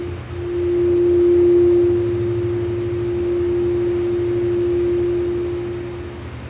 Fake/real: real